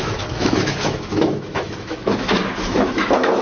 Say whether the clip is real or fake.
fake